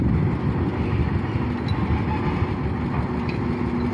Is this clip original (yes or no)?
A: yes